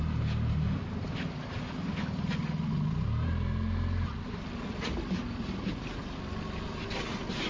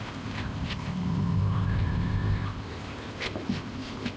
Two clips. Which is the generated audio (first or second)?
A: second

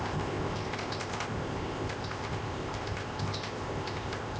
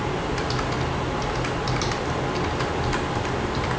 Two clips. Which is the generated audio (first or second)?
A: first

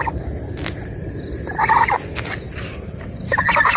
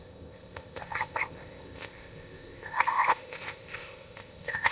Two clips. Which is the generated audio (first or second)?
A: second